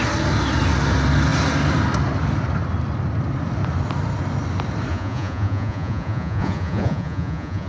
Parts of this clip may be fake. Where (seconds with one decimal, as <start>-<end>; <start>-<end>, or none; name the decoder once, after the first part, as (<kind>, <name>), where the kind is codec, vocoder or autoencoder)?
4.9-7.7 (vocoder, Vocos)

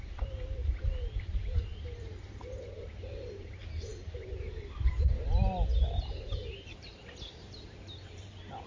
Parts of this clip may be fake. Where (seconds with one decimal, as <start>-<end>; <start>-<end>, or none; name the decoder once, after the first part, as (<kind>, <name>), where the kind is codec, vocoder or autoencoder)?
0.0-0.6 (vocoder, BigVGAN v2); 1.2-8.7